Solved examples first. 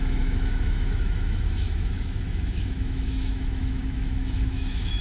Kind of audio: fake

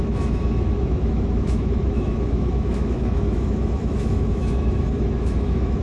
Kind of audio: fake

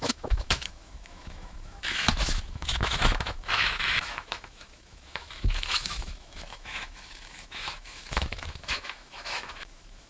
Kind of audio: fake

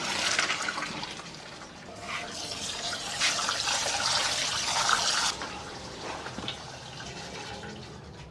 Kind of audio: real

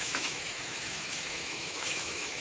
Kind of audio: fake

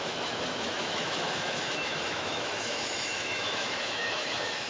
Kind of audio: fake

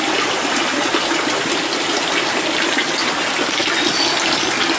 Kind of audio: real